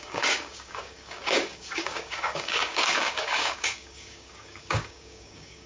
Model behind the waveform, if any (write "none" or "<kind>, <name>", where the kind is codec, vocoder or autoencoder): codec, DAC